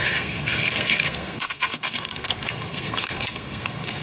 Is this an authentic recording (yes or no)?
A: no